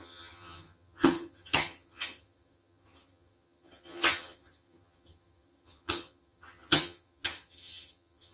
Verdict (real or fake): fake